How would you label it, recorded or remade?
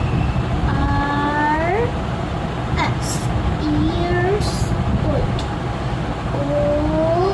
recorded